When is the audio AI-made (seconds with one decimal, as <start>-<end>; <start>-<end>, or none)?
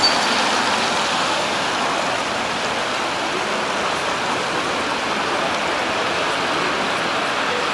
1.1-1.7